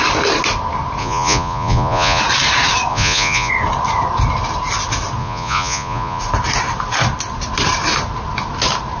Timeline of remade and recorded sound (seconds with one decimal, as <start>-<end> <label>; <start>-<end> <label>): 0.0-1.0 recorded; 1.0-2.2 remade; 2.2-2.9 recorded; 2.9-3.5 remade; 3.5-5.2 recorded; 5.2-6.2 remade; 6.2-9.0 recorded